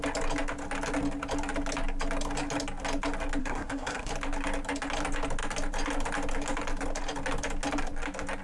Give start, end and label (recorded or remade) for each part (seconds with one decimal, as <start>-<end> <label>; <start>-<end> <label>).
0.0-3.4 recorded; 3.4-4.1 remade; 4.1-8.4 recorded